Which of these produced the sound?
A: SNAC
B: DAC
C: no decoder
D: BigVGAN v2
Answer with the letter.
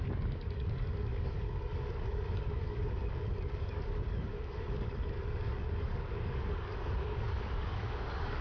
B